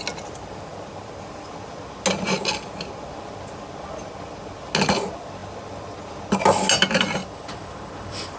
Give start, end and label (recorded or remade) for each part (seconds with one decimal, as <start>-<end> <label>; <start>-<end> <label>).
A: 0.0-7.2 recorded; 7.2-8.4 remade